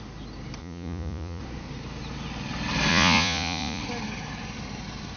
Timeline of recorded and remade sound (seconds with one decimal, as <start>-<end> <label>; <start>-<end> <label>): 0.0-0.6 recorded; 0.6-1.4 remade; 1.4-2.9 recorded; 2.9-3.8 remade; 3.8-5.2 recorded

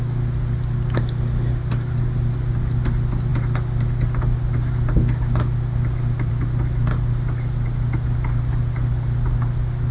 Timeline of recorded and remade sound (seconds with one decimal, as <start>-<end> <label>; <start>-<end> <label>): 0.0-9.9 recorded

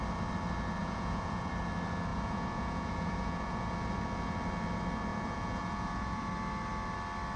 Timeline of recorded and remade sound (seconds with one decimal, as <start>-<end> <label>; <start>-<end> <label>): 0.0-0.8 recorded; 0.8-1.5 remade; 1.5-2.1 recorded; 2.1-3.7 remade; 3.7-5.1 recorded; 5.1-6.3 remade; 6.3-7.4 recorded

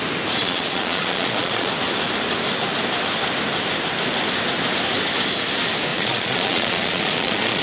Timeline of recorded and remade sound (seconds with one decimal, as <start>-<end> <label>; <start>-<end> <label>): 0.0-0.4 recorded; 0.4-1.7 remade; 1.7-5.9 recorded; 5.9-7.6 remade

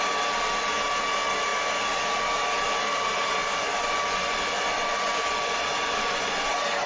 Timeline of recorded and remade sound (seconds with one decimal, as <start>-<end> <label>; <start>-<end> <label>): 0.0-3.4 recorded; 3.4-6.5 remade; 6.5-6.9 recorded

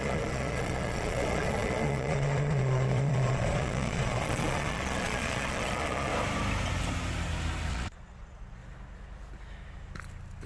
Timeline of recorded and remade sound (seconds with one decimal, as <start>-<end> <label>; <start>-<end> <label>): 0.0-6.1 remade; 6.1-7.7 recorded; 7.7-8.6 remade; 8.6-10.5 recorded

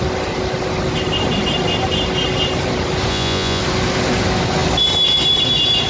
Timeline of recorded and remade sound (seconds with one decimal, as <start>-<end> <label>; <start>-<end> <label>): 0.0-3.1 recorded; 3.1-3.6 remade; 3.6-5.9 recorded

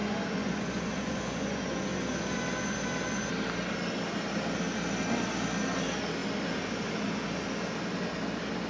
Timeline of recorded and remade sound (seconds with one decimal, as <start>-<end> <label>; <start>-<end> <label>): 0.0-3.3 remade; 3.3-8.7 recorded